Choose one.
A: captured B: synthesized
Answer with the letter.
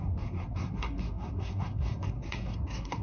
B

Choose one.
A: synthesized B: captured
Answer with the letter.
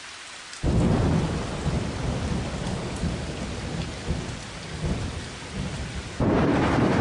B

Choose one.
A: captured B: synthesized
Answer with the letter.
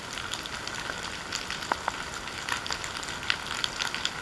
A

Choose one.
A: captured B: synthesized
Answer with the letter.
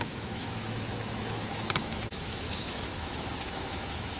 B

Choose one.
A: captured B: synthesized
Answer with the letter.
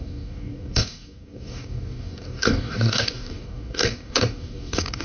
B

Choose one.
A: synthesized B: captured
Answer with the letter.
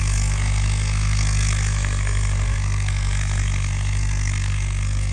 A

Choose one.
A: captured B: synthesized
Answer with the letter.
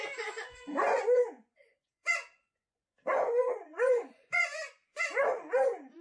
B